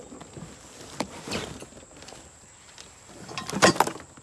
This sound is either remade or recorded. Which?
recorded